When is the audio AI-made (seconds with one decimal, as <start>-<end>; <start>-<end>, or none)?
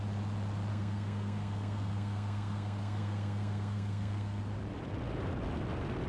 0.7-4.4